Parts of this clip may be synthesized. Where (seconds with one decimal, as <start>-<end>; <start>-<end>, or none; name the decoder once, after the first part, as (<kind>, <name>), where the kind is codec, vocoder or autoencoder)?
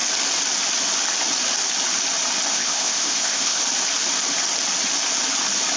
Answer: 2.5-3.6 (codec, ZipCodec)